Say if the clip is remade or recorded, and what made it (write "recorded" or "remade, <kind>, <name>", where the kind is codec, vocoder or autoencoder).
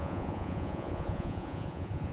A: remade, vocoder, Vocos